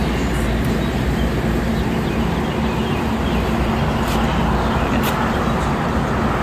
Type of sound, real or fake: real